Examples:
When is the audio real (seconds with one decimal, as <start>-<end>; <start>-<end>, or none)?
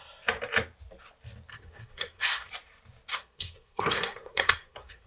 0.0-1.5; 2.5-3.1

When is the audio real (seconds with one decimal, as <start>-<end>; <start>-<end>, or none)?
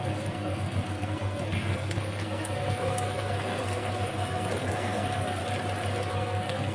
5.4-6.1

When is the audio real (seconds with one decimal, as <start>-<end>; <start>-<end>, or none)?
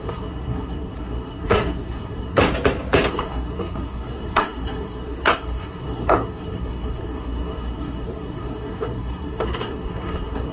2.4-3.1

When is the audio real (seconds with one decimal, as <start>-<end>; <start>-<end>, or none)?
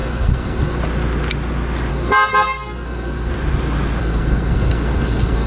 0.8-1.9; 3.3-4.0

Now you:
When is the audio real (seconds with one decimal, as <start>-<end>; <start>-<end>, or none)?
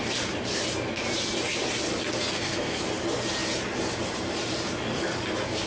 0.0-2.2; 2.8-5.7